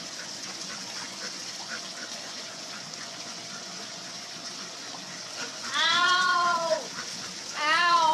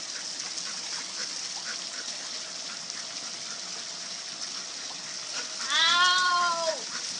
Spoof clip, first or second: first